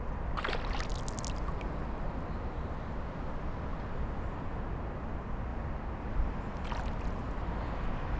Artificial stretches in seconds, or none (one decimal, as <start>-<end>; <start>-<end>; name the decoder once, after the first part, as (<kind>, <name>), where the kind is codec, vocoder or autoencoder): none